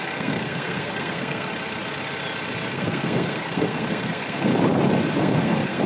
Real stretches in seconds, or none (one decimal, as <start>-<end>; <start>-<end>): 1.5-2.7; 4.5-5.2